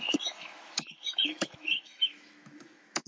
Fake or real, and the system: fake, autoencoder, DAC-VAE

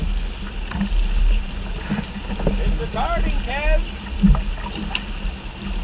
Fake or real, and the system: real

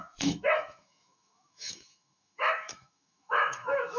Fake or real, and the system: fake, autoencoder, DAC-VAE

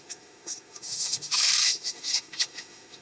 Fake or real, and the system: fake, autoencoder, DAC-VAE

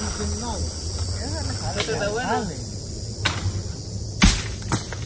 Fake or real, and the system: real